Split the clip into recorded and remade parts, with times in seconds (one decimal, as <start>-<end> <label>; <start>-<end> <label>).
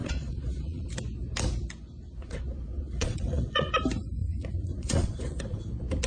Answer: 0.0-0.8 remade; 0.8-2.2 recorded; 2.2-3.7 remade; 3.7-4.2 recorded; 4.2-5.6 remade; 5.6-6.1 recorded